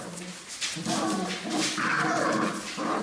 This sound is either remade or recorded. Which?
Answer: recorded